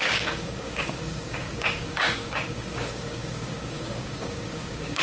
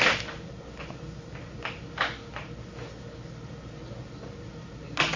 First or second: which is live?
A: second